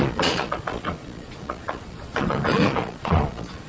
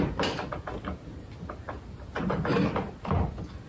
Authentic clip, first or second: second